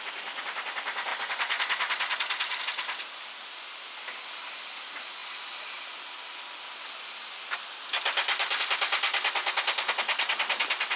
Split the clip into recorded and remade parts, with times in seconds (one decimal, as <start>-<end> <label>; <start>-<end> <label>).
0.0-11.0 recorded